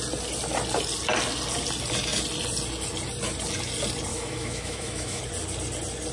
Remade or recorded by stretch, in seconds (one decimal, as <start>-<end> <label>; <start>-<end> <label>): 0.0-4.1 recorded; 4.1-5.2 remade; 5.2-6.1 recorded